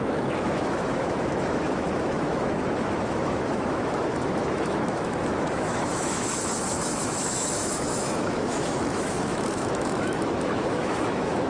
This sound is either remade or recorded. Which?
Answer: remade